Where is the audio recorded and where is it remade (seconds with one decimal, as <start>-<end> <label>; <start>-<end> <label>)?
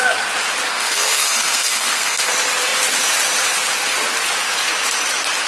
0.0-0.7 recorded; 0.7-2.3 remade; 2.3-5.5 recorded